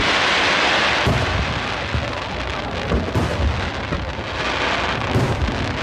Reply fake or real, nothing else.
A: real